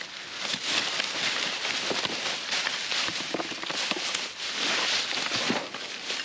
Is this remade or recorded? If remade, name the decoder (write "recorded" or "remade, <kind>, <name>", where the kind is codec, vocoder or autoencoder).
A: recorded